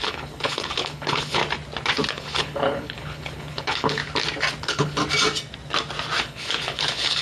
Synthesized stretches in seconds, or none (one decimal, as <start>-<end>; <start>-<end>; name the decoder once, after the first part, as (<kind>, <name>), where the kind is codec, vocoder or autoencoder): 0.0-1.4 (codec, HILCodec); 2.1-4.0; 4.6-5.0; 6.2-7.2